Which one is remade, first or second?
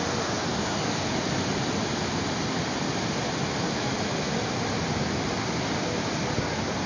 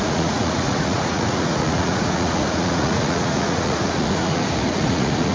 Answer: second